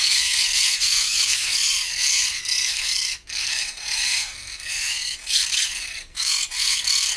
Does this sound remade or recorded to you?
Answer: remade